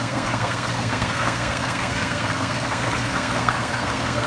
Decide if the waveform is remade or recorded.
remade